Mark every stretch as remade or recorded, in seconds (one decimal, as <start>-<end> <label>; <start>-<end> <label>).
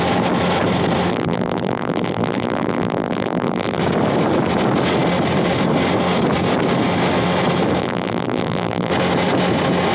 0.0-1.1 recorded; 1.1-3.8 remade; 3.8-7.8 recorded; 7.8-8.9 remade; 8.9-9.9 recorded